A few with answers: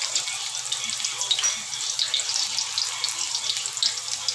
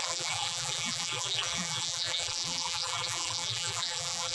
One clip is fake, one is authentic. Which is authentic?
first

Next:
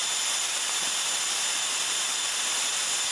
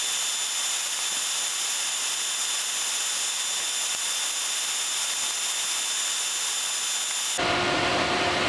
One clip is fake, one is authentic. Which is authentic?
second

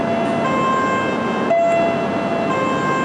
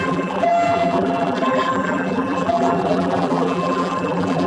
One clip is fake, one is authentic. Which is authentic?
first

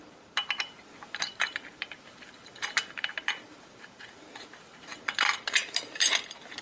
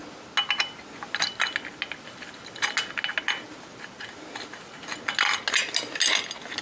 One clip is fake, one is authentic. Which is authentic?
second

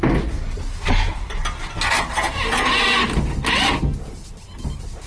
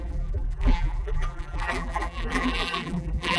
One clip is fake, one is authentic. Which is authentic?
first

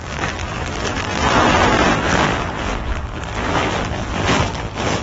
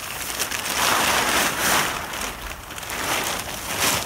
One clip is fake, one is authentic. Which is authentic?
second